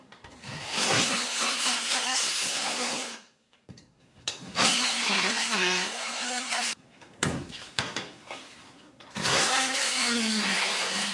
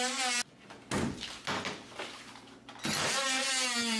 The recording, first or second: second